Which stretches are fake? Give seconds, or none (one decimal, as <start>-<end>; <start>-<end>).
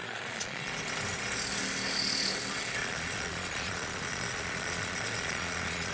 0.0-0.7; 2.8-5.9